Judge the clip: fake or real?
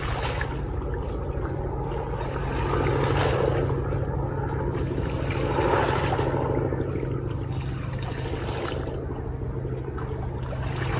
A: real